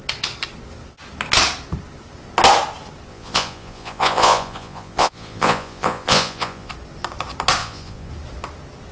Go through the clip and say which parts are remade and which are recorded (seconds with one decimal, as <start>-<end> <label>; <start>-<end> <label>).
0.0-3.1 recorded; 3.1-6.7 remade; 6.7-7.6 recorded; 7.6-8.1 remade; 8.1-8.9 recorded